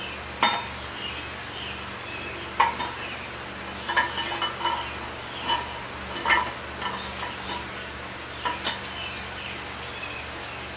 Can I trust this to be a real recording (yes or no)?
yes